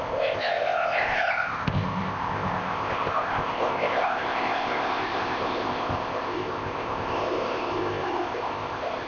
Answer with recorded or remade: remade